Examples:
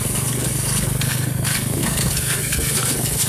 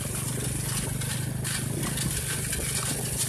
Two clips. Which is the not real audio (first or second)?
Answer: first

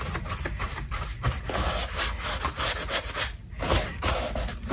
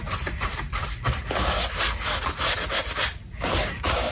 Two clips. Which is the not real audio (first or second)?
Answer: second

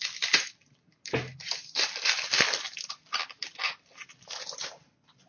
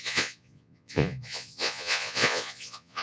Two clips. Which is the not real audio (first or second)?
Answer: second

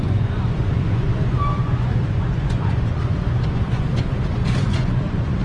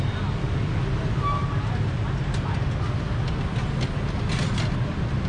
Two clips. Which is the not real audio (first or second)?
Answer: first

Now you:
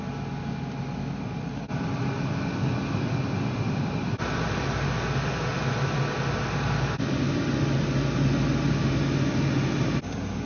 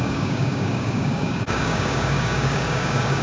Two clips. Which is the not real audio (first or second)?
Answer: second